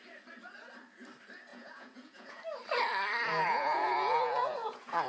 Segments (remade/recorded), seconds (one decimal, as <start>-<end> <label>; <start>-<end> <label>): 0.0-1.5 recorded; 1.5-2.4 remade; 2.4-3.3 recorded; 3.3-5.1 remade